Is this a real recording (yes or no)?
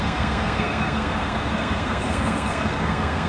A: no